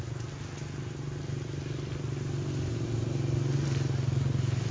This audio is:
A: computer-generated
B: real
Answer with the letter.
B